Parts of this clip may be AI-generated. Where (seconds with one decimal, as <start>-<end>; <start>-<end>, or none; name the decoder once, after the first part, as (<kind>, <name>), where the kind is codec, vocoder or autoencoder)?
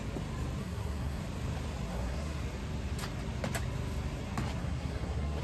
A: 0.6-1.2 (codec, SNAC); 1.9-2.4; 4.6-5.4